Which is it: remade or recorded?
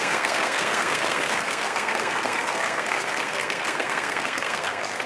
remade